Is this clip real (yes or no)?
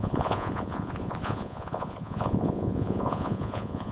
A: no